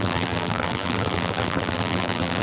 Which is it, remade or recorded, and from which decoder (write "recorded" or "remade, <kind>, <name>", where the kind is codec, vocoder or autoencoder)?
remade, vocoder, BigVGAN v2